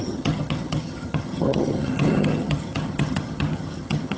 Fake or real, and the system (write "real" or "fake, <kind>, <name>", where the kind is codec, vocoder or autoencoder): fake, vocoder, HiFi-GAN